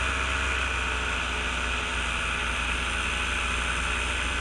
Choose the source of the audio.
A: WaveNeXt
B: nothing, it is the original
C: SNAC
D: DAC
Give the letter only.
B